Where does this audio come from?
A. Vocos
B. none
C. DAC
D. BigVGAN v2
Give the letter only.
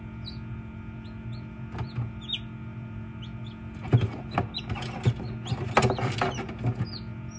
B